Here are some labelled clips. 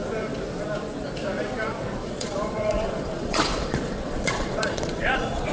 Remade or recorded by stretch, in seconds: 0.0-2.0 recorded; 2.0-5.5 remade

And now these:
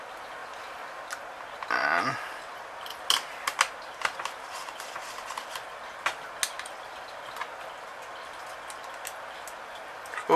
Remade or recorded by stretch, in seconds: 0.0-10.4 recorded

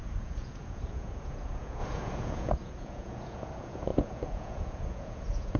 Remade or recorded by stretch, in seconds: 0.0-5.6 remade

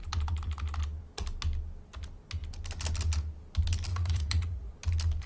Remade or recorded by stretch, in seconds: 0.0-3.9 recorded; 3.9-4.7 remade; 4.7-5.3 recorded

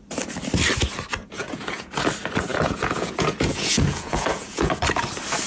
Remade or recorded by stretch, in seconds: 0.0-1.2 recorded; 1.2-1.9 remade; 1.9-2.5 recorded; 2.5-4.7 remade; 4.7-5.5 recorded

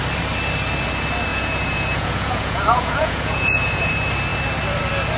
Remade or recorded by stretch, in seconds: 0.0-1.3 recorded; 1.3-3.9 remade; 3.9-5.2 recorded